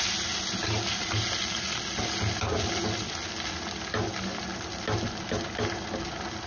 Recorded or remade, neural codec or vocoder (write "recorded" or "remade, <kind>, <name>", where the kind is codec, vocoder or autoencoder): recorded